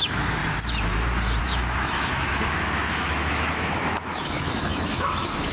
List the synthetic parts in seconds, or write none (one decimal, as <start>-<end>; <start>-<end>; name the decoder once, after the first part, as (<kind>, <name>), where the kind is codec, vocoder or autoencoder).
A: 0.0-0.4 (autoencoder, DAC-VAE); 1.4-5.5